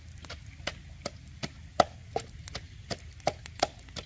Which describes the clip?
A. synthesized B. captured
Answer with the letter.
B